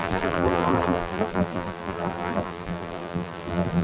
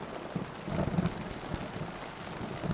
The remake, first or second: first